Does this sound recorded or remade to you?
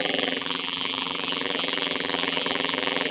remade